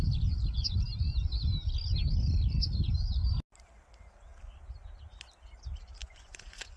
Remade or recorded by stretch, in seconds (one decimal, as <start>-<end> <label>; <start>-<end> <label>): 0.0-6.0 recorded; 6.0-6.8 remade